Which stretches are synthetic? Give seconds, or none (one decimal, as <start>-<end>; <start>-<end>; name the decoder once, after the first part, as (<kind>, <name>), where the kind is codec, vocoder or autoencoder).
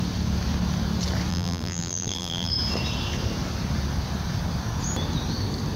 1.3-2.5 (vocoder, BigVGAN v2)